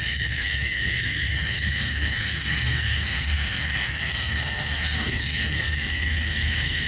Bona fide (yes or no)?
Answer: no